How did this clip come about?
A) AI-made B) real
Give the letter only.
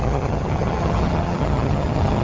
A